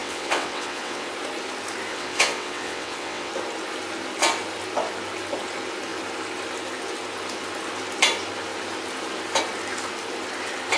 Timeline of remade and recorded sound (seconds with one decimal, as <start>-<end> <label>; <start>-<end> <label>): 0.0-1.1 remade; 1.1-1.9 recorded; 1.9-3.3 remade; 3.3-10.8 recorded